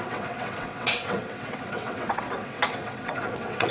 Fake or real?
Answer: fake